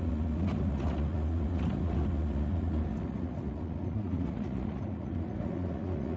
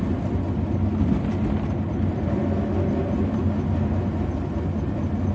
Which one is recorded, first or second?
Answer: second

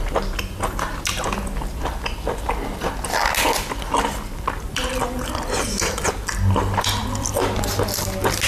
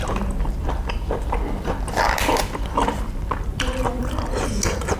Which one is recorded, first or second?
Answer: first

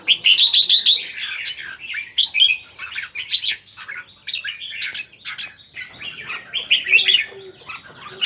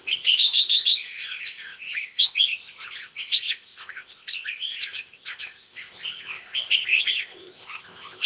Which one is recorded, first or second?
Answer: first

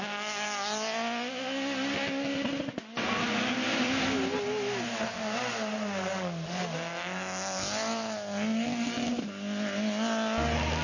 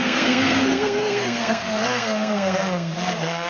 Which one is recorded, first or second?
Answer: first